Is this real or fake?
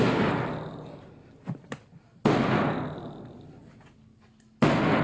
real